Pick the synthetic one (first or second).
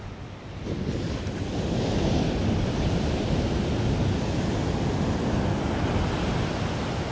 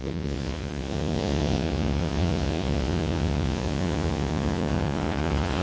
second